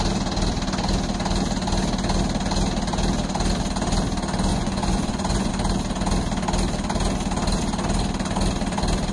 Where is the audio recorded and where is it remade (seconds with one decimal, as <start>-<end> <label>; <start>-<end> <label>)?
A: 0.0-4.5 recorded; 4.5-5.5 remade; 5.5-9.1 recorded

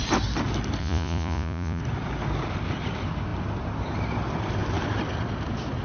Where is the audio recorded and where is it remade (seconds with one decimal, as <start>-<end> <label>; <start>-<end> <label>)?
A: 0.0-0.8 recorded; 0.8-1.8 remade; 1.8-5.8 recorded

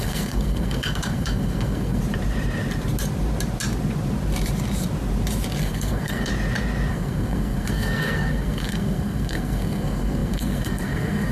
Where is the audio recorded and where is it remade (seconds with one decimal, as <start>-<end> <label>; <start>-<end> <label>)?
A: 0.0-2.0 remade; 2.0-5.6 recorded; 5.6-6.3 remade; 6.3-6.9 recorded; 6.9-11.3 remade

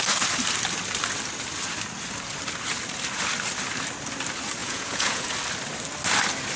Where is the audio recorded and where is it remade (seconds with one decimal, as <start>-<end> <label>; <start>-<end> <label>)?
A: 0.0-4.6 recorded; 4.6-5.3 remade; 5.3-6.6 recorded

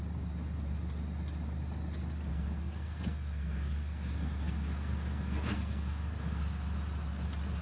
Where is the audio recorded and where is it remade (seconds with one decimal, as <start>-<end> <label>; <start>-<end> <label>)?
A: 0.0-2.3 recorded; 2.3-6.4 remade; 6.4-7.6 recorded

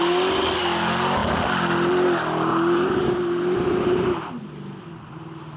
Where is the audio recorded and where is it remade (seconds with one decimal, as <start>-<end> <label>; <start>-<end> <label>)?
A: 0.0-2.5 recorded; 2.5-4.3 remade; 4.3-5.6 recorded

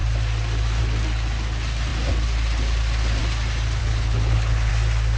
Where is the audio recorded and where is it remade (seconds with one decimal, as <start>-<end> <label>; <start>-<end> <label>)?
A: 0.0-3.8 recorded; 3.8-4.7 remade; 4.7-5.2 recorded